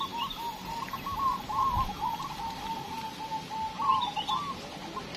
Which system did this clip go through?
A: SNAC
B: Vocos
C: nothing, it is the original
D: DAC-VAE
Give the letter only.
C